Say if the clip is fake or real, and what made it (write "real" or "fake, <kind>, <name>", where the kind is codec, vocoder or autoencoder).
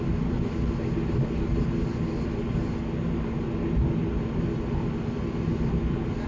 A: real